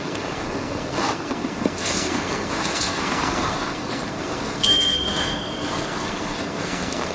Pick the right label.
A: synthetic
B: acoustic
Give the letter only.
A